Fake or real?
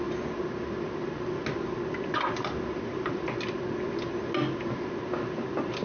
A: real